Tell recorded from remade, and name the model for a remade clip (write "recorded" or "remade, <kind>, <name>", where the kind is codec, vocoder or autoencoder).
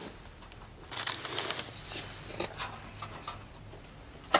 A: recorded